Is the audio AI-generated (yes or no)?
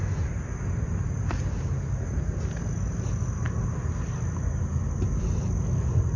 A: no